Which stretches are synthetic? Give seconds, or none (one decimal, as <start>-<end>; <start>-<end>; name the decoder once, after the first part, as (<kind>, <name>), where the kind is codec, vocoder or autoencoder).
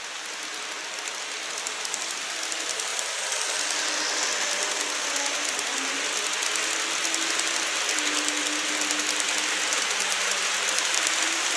9.7-11.6 (vocoder, BigVGAN v2)